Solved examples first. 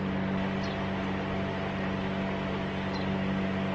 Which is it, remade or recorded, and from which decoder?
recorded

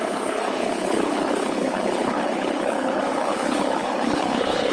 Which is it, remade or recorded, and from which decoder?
remade, codec, HILCodec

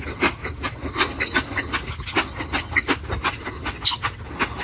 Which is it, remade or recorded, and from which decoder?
recorded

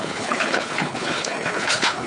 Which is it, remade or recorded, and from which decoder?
remade, codec, HILCodec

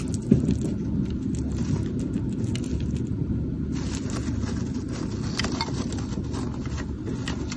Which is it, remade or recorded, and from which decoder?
recorded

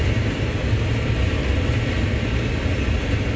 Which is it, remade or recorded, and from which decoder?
recorded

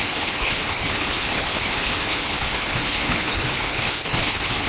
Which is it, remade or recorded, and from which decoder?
remade, codec, HILCodec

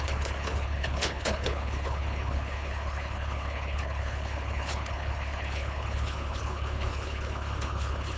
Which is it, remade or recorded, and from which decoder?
remade, codec, HILCodec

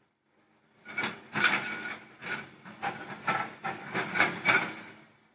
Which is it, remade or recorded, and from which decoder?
recorded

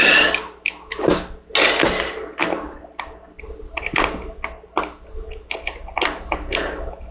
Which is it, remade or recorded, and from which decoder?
recorded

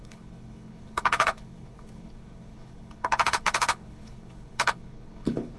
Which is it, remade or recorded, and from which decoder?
remade, codec, HILCodec